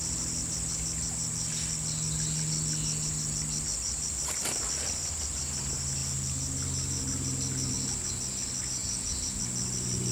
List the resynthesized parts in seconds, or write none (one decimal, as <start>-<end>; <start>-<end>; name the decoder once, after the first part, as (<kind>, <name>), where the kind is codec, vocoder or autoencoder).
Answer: 8.8-9.4 (vocoder, Vocos)